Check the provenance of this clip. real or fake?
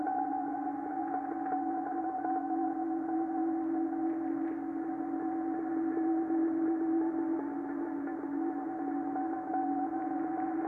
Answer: real